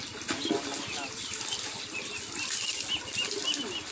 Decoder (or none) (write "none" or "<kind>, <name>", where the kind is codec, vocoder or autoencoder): none